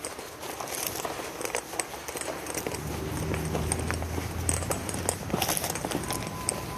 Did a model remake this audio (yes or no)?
no